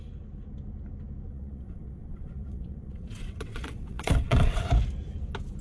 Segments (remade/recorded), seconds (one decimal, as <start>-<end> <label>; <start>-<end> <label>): 0.0-1.3 recorded; 1.3-4.7 remade; 4.7-5.6 recorded